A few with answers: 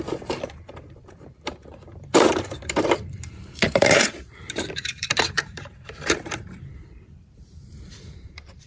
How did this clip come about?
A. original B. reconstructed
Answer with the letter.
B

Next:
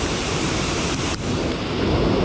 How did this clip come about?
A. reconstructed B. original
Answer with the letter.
A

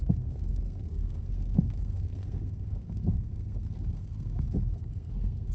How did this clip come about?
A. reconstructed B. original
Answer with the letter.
A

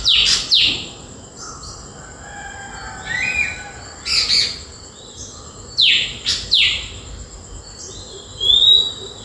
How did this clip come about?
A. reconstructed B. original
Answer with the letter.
B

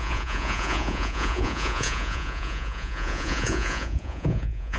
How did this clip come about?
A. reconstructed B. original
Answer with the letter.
A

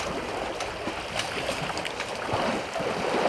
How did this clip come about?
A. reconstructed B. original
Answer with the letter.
B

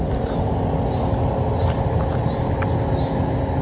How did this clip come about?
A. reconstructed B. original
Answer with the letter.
B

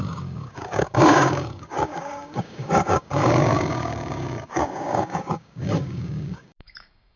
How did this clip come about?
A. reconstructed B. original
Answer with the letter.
A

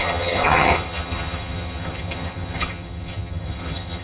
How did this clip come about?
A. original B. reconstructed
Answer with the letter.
B